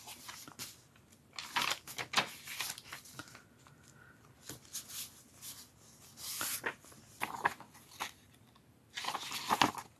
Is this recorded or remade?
recorded